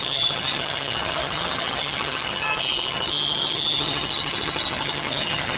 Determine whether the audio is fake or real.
fake